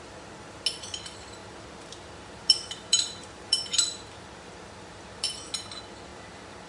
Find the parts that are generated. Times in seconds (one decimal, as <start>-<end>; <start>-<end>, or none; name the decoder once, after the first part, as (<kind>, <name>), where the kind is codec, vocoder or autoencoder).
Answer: 1.4-5.4 (vocoder, BigVGAN v2); 6.1-6.7